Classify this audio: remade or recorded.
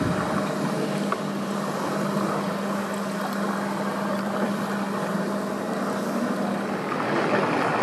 recorded